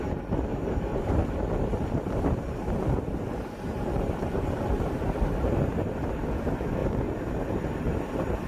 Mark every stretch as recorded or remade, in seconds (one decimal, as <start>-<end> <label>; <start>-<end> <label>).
0.0-0.5 recorded; 0.5-5.6 remade; 5.6-8.5 recorded